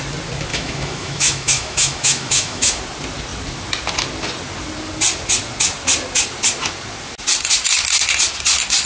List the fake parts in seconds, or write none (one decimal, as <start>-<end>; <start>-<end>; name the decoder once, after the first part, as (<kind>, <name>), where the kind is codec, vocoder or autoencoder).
0.5-2.8 (autoencoder, DAC-VAE)